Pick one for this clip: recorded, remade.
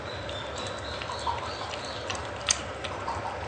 recorded